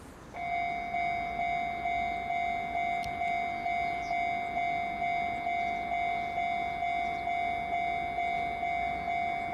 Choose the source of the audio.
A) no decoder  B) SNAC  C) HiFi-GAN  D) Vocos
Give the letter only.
A